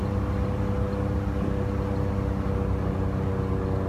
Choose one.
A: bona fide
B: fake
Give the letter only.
A